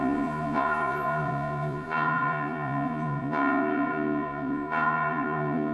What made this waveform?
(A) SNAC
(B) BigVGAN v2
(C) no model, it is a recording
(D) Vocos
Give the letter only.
D